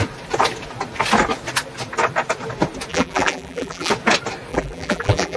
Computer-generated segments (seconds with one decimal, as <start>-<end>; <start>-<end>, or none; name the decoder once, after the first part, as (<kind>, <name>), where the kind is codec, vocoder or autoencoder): 2.9-3.9 (vocoder, BigVGAN v2); 4.5-5.4